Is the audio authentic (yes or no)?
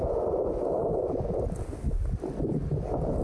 yes